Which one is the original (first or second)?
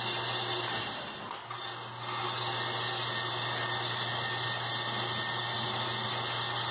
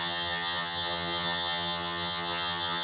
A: first